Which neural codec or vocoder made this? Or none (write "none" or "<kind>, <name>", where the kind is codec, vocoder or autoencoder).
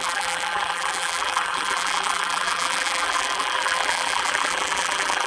vocoder, BigVGAN v2